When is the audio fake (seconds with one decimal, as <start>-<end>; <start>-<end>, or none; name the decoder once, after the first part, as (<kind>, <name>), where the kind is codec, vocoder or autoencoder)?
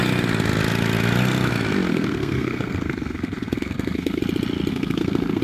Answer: 1.9-4.2 (codec, SNAC); 4.7-5.4